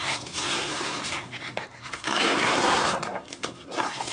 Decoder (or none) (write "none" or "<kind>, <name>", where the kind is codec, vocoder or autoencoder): codec, SNAC